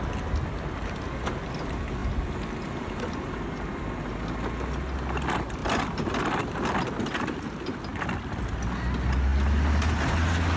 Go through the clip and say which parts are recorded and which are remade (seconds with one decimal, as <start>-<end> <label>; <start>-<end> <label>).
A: 0.0-10.6 recorded